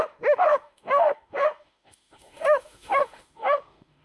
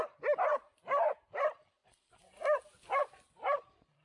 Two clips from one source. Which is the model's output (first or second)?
first